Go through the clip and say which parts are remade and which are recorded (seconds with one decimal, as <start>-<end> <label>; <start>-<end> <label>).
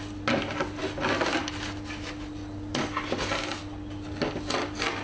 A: 0.0-5.0 recorded